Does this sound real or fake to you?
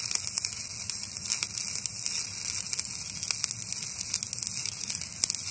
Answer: real